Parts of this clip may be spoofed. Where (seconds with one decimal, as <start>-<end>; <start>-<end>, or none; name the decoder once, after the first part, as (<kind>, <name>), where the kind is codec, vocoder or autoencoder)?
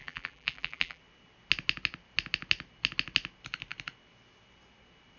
0.0-1.0 (vocoder, BigVGAN v2)